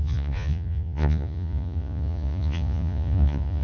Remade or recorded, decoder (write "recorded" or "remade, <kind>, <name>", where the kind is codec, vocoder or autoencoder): remade, vocoder, Vocos